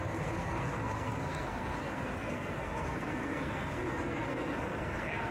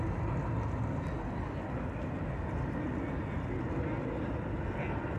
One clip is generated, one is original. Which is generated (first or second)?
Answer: first